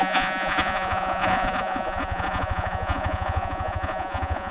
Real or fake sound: fake